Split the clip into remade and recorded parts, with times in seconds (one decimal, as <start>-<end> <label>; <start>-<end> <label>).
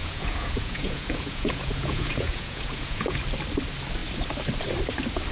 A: 0.0-3.2 remade; 3.2-5.3 recorded